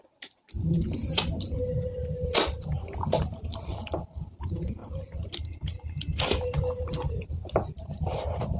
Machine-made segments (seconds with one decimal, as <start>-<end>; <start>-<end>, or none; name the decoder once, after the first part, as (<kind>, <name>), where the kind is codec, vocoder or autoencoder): none